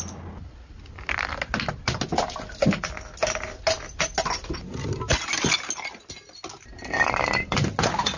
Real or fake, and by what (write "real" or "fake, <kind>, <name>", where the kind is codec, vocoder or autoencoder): real